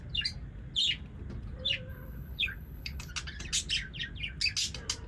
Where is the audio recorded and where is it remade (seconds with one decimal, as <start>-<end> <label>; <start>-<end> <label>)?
0.0-1.9 recorded; 1.9-3.1 remade; 3.1-5.1 recorded